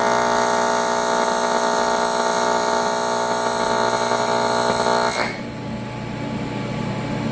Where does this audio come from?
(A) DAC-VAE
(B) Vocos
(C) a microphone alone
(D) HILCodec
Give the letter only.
C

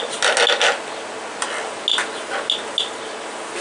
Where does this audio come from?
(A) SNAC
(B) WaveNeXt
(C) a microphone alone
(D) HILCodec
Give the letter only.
C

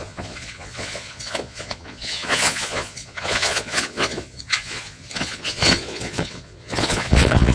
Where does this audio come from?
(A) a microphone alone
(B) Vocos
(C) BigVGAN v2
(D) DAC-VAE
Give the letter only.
B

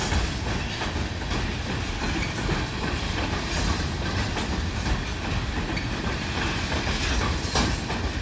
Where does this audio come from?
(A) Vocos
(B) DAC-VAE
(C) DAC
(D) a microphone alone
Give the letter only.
D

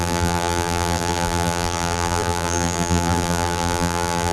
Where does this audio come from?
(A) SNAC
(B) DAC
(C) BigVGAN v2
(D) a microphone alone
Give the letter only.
C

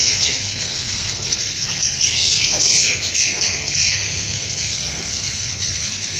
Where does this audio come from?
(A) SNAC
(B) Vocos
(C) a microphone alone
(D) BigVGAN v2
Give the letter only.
A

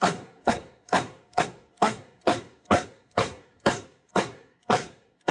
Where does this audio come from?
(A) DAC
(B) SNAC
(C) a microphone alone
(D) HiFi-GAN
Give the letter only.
B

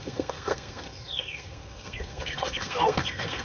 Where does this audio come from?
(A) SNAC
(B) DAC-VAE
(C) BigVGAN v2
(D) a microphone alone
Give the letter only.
A